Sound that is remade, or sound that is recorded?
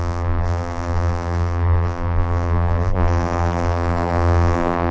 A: remade